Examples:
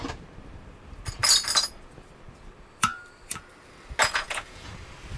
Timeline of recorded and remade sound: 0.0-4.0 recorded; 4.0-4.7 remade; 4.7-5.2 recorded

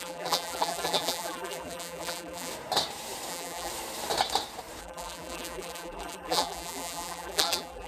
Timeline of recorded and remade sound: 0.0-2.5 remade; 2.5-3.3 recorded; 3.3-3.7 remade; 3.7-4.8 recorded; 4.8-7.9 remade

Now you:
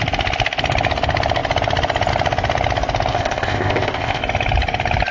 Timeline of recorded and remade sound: 0.0-3.1 recorded; 3.1-4.2 remade; 4.2-5.1 recorded